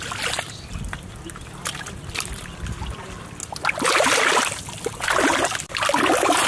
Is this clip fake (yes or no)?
no